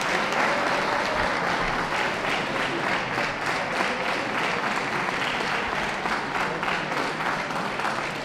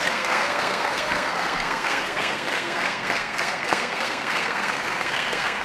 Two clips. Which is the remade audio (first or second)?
second